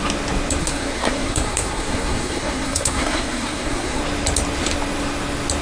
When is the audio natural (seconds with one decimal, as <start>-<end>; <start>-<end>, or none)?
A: 0.0-0.6; 4.0-5.6